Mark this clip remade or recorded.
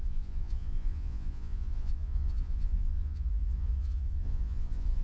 remade